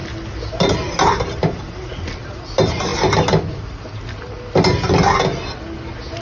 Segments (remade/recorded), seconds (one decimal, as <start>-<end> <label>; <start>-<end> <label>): 0.0-6.2 recorded